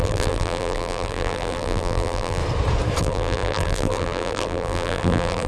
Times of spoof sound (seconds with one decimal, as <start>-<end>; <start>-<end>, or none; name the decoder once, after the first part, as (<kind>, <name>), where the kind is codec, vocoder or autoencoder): 0.0-2.4 (vocoder, BigVGAN v2); 3.0-5.5